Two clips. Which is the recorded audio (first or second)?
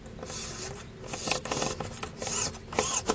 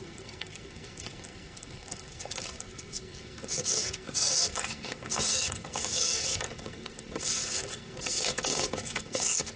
first